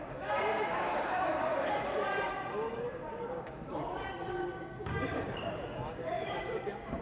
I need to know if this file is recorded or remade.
remade